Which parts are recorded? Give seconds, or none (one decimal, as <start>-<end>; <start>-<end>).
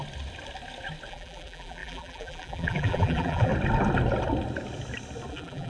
0.0-1.1; 3.5-5.3